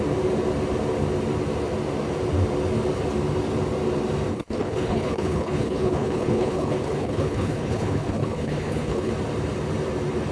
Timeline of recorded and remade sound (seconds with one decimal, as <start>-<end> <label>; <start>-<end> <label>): 0.0-4.3 recorded; 4.3-9.1 remade; 9.1-10.3 recorded